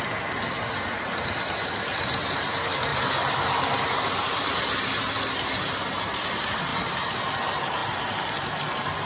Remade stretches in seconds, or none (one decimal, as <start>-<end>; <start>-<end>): none